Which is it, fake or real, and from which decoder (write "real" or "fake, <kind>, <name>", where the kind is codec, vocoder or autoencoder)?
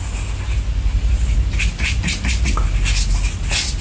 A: real